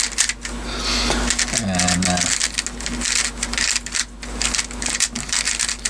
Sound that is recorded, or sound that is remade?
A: recorded